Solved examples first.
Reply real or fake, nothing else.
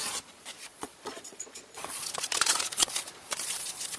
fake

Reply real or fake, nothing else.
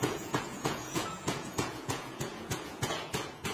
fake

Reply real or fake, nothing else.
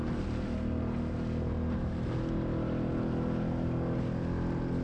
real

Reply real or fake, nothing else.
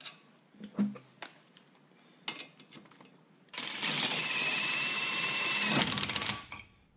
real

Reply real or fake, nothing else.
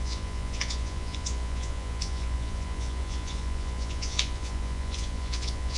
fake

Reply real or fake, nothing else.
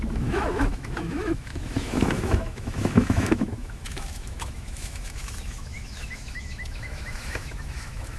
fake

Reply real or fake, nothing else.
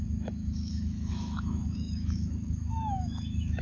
fake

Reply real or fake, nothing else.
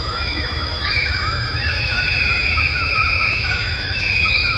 fake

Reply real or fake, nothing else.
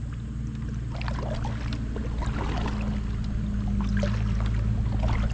real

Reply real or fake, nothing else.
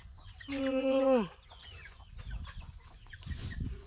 fake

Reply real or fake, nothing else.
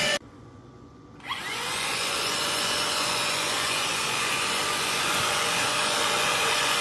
fake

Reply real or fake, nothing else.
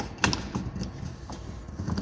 real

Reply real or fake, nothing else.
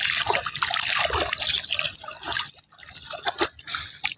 real